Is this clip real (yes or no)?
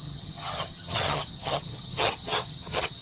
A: no